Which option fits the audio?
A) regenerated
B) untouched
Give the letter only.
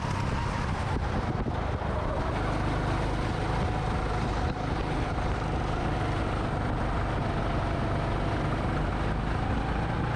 B